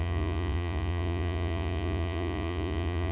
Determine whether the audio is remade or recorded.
remade